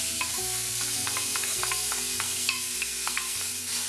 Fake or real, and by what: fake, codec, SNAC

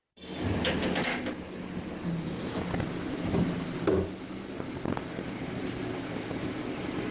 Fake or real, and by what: real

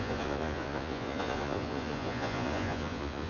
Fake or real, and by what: fake, vocoder, Vocos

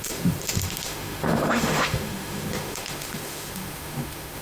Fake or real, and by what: fake, autoencoder, DAC-VAE